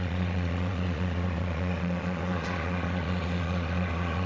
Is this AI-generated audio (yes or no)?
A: yes